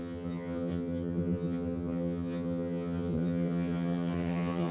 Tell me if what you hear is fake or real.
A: fake